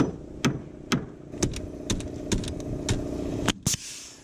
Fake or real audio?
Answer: real